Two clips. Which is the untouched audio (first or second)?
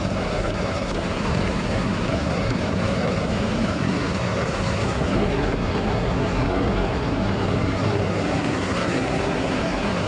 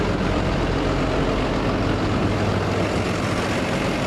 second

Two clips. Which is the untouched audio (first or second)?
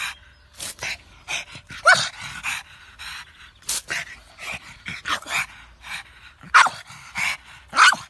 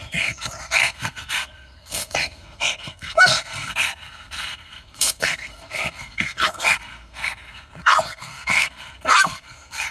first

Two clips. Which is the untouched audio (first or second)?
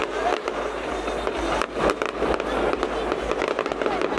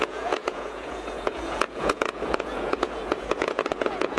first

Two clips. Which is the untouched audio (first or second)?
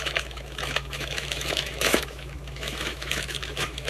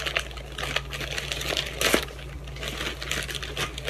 second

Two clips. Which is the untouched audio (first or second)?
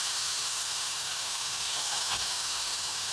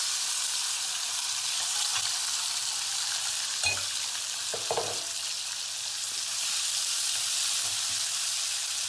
second